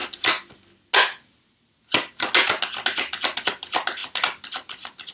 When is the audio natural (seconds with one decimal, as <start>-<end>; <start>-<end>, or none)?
0.0-5.1